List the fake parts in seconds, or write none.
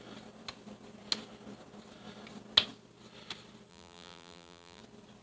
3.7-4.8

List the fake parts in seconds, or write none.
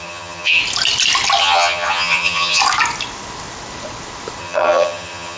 0.0-0.6; 1.4-2.6; 4.4-5.4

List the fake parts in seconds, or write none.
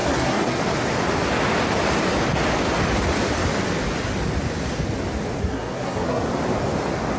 0.0-0.6; 5.4-6.3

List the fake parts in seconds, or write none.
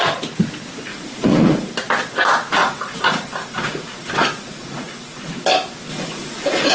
0.9-1.7; 2.6-5.3; 5.9-6.7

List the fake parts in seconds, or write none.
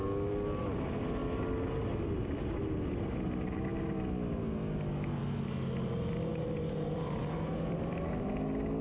none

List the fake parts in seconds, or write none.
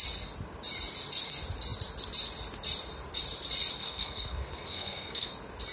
3.8-5.3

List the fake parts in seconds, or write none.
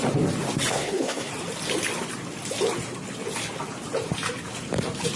0.7-1.3